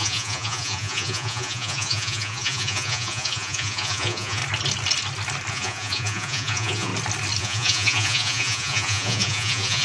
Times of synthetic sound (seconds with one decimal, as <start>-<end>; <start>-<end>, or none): 0.0-4.4; 5.5-6.9; 7.4-9.8

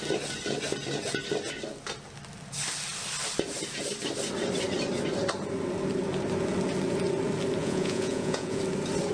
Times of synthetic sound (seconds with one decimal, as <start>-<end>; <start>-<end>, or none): 7.6-8.6

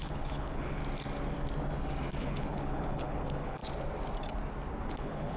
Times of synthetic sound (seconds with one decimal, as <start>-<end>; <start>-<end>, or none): 0.0-0.8; 2.1-3.6; 4.8-5.4

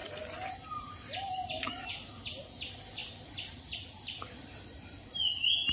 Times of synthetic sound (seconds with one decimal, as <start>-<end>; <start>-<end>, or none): none

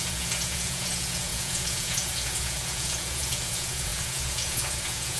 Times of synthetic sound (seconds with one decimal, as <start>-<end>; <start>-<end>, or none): 0.0-5.2